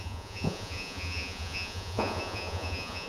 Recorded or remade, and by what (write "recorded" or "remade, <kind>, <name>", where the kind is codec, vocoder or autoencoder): remade, vocoder, Vocos